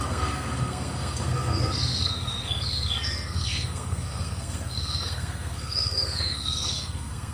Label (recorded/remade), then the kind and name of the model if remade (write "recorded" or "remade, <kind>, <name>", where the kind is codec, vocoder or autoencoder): remade, codec, SNAC